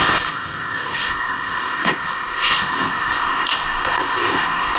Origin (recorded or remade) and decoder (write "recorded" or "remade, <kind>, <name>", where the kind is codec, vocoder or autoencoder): remade, codec, ZipCodec